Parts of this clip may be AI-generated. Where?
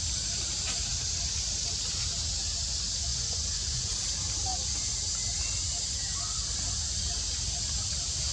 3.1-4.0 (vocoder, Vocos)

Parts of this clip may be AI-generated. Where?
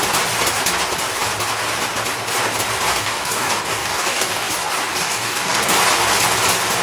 2.9-4.5 (codec, DAC); 4.9-5.8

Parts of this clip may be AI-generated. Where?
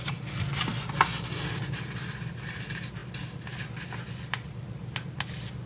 none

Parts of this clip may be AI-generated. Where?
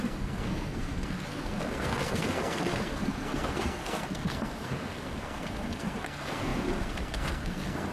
0.0-7.9 (codec, SNAC)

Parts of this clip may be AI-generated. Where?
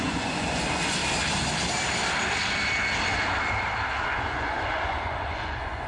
0.0-1.0 (vocoder, Vocos); 4.0-5.9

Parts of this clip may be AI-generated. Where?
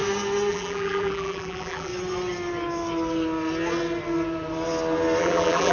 0.5-1.9 (vocoder, BigVGAN v2); 5.2-5.7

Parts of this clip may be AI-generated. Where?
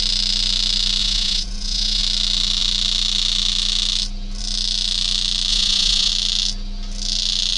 1.0-2.0 (vocoder, Vocos); 5.5-6.1